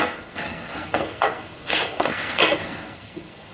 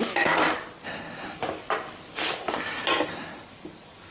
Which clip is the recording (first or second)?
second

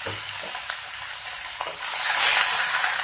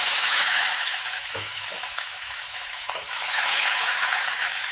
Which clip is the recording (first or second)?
first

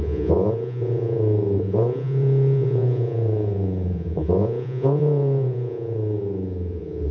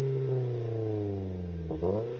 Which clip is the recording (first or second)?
second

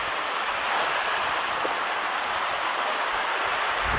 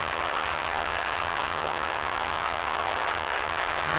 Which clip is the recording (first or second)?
first